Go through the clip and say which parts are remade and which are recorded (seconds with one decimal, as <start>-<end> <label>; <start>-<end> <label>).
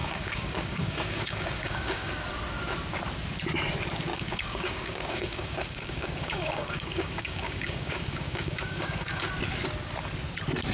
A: 0.0-2.1 remade; 2.1-4.1 recorded; 4.1-9.3 remade; 9.3-10.7 recorded